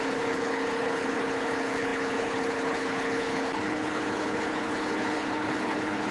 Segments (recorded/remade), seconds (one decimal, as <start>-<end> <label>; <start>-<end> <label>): 0.0-6.1 remade